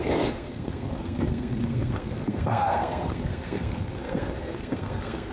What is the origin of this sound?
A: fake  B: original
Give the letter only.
A